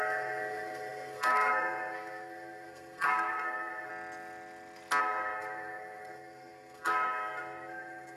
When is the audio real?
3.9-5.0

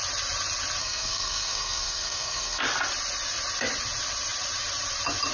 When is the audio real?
0.0-0.8; 2.6-5.3

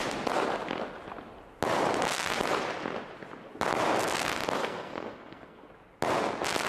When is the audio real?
0.0-4.6; 5.7-6.7

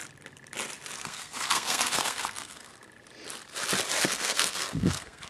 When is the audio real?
0.0-1.0; 2.7-4.0

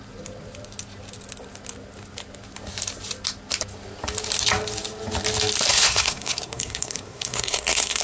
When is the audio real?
0.0-5.7

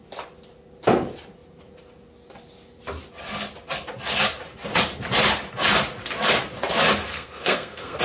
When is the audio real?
0.0-7.1

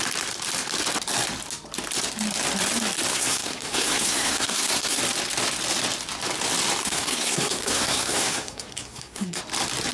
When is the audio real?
0.0-3.1; 5.0-6.8; 9.4-9.9